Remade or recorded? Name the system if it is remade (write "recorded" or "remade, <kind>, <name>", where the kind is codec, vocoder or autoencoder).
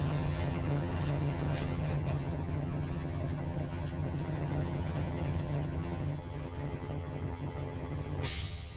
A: remade, vocoder, HiFi-GAN